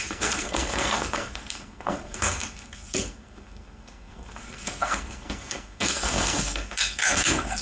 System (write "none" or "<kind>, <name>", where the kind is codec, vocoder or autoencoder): codec, SNAC